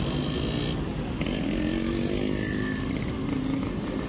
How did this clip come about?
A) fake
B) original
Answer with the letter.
B